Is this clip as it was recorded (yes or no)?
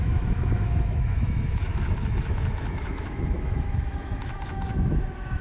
no